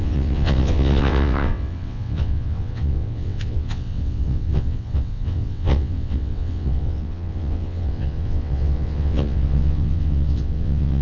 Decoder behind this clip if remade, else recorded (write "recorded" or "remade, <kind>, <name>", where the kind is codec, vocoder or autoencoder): remade, vocoder, WaveNeXt